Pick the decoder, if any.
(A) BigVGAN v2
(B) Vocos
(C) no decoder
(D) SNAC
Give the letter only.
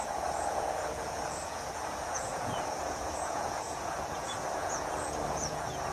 B